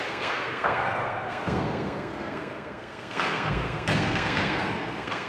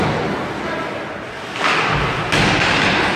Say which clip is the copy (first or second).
first